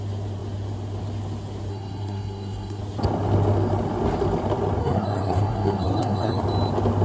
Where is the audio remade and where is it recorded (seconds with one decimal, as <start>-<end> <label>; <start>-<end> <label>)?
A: 0.0-1.7 recorded; 1.7-2.8 remade; 2.8-4.8 recorded; 4.8-6.4 remade; 6.4-7.0 recorded

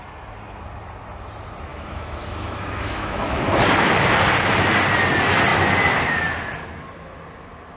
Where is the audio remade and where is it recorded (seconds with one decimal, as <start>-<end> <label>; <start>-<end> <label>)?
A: 0.0-1.7 recorded; 1.7-3.4 remade; 3.4-7.8 recorded

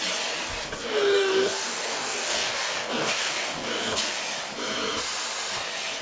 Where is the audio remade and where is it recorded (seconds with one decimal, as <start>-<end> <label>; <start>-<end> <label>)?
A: 0.0-0.8 recorded; 0.8-4.2 remade; 4.2-6.0 recorded

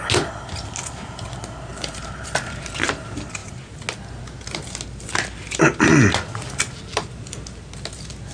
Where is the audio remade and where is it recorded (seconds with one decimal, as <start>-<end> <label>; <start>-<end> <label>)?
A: 0.0-1.7 recorded; 1.7-2.7 remade; 2.7-8.3 recorded